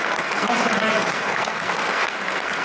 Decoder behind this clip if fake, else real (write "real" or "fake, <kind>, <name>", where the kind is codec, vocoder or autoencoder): fake, codec, SNAC